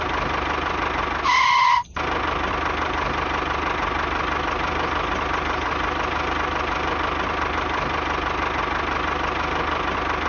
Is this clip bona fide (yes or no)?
yes